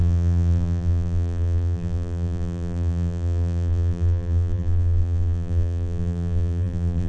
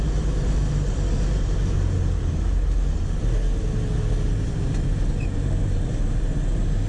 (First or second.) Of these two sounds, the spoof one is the first